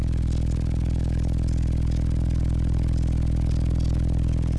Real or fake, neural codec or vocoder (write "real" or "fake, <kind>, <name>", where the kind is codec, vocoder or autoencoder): real